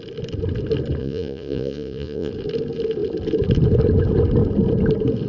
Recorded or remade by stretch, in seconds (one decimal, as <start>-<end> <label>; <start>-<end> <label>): 0.0-1.0 recorded; 1.0-2.3 remade; 2.3-5.3 recorded